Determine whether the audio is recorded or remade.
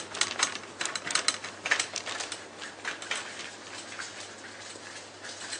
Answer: recorded